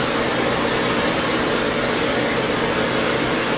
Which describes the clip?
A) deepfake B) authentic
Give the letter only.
B